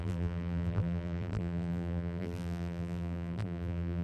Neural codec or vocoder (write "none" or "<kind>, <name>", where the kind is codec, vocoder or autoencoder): vocoder, BigVGAN v2